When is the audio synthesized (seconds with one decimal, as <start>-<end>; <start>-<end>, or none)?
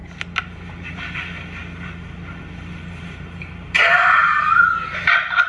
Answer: 0.7-1.6; 2.3-4.2